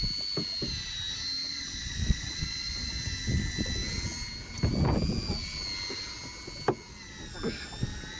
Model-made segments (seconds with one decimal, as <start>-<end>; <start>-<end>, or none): 1.4-3.0